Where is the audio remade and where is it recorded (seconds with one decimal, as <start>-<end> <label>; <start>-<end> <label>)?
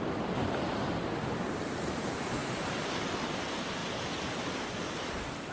0.0-5.5 recorded